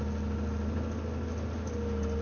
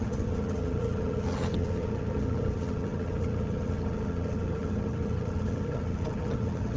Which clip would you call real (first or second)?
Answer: first